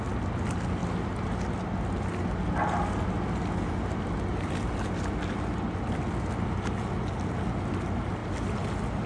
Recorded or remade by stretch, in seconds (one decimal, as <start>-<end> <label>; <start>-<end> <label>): 0.0-9.1 recorded